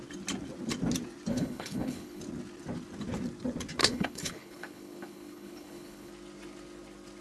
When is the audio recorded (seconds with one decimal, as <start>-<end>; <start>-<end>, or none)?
0.0-1.3; 2.2-3.8; 6.1-7.2